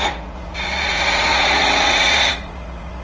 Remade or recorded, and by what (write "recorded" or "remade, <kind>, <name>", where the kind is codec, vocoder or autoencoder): remade, vocoder, Vocos